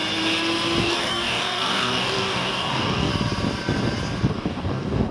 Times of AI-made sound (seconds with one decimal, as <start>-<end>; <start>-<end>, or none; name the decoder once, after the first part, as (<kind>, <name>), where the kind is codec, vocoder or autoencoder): 0.8-3.1 (codec, DAC); 4.3-5.1